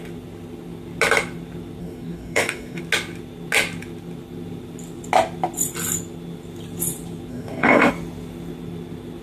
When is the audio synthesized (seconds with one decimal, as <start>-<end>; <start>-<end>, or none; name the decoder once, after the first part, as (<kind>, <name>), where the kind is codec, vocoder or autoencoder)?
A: 1.8-2.8 (codec, DAC); 7.3-7.9